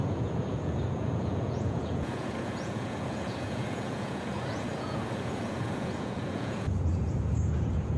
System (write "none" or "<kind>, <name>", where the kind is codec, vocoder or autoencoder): vocoder, Vocos